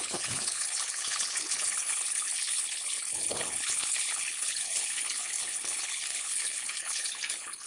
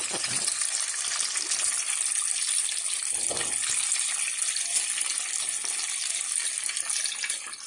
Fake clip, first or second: first